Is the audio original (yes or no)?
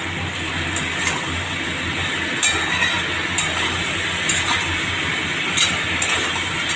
yes